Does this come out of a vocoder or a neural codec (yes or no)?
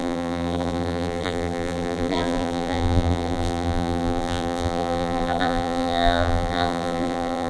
yes